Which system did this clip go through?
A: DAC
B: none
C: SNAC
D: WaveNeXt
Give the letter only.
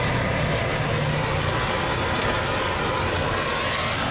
B